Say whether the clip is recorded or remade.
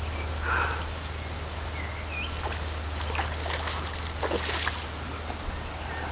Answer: recorded